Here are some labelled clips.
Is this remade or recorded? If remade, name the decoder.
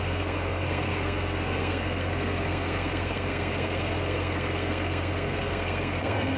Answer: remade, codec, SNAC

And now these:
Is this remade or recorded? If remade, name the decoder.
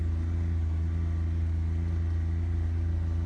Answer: recorded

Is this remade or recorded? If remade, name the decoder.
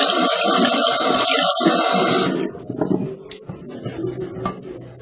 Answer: recorded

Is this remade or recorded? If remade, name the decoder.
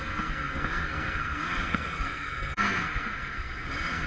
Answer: remade, codec, SNAC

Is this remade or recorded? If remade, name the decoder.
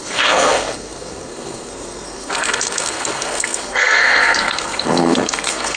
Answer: remade, codec, SNAC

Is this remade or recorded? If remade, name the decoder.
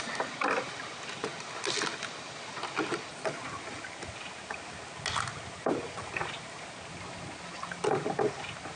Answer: recorded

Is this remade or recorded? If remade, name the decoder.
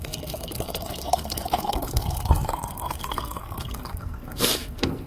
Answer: remade, codec, SNAC